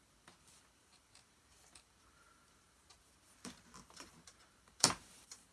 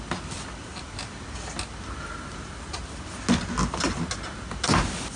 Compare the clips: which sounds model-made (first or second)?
first